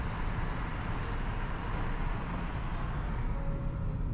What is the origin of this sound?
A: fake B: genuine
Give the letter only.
B